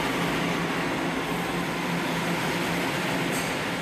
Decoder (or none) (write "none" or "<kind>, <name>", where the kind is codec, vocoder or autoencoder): none